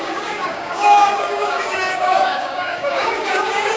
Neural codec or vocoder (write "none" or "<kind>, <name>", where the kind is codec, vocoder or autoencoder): codec, DAC